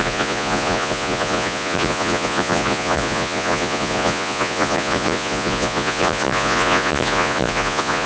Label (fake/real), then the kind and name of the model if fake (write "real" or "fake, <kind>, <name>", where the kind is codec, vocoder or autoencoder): fake, vocoder, Vocos